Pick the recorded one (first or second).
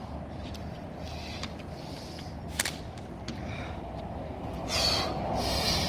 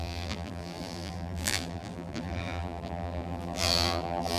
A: first